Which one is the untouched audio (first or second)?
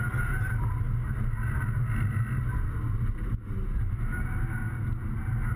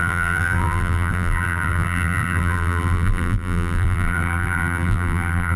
first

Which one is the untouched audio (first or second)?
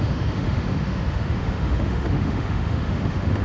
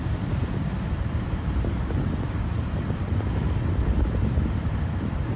second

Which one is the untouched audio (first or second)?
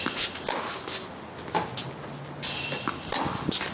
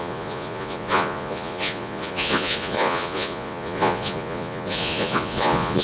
first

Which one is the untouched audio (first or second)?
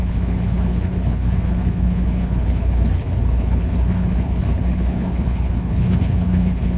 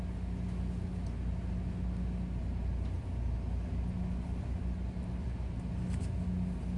second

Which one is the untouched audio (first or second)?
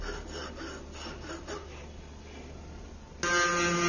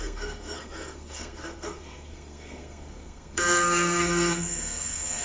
first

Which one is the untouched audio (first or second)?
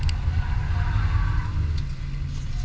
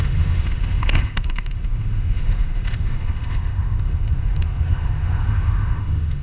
first